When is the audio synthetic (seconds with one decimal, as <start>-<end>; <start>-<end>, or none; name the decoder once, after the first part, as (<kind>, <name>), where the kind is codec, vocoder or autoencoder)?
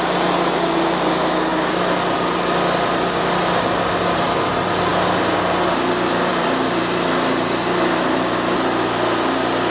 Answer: none